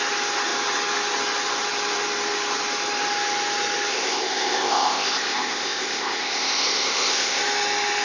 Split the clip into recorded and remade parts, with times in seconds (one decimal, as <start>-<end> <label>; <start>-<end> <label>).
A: 0.0-3.9 recorded; 3.9-7.4 remade; 7.4-8.0 recorded